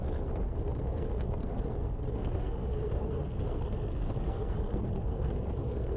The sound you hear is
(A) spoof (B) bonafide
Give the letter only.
A